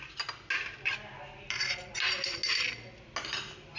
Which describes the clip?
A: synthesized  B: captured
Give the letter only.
B